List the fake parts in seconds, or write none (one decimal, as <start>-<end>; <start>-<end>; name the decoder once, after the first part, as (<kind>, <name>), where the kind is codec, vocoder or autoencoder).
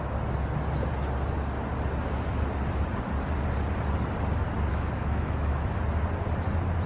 4.7-5.7 (autoencoder, DAC-VAE)